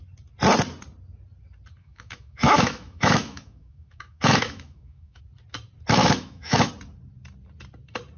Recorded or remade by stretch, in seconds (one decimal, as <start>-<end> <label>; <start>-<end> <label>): 0.0-1.8 recorded; 1.8-5.2 remade; 5.2-6.0 recorded; 6.0-6.7 remade; 6.7-8.2 recorded